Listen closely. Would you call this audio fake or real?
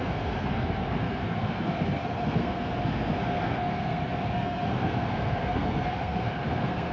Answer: fake